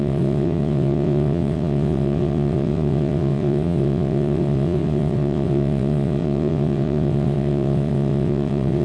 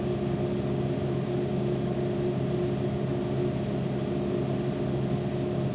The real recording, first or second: second